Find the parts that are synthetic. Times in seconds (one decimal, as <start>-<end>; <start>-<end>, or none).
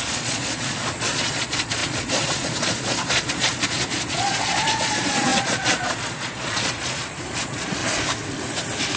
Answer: 0.0-7.8